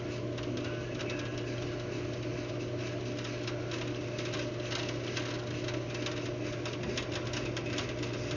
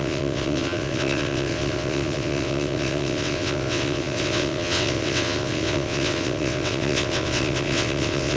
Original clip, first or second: first